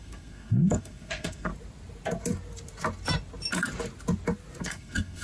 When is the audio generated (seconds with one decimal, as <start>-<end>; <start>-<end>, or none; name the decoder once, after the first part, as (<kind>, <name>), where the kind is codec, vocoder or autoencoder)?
0.0-1.5 (codec, SNAC); 4.6-5.2